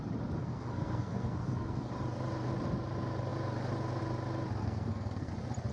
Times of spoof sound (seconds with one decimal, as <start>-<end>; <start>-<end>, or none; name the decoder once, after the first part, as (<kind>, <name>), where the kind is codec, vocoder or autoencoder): 0.4-1.9 (codec, SNAC); 4.6-5.3